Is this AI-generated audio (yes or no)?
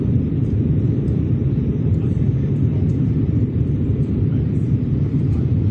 yes